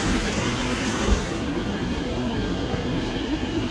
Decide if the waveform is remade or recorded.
remade